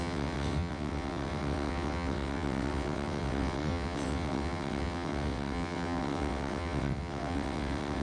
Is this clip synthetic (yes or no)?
yes